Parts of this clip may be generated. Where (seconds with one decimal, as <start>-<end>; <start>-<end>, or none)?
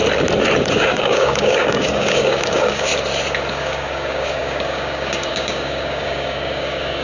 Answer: 0.7-2.9; 3.5-7.0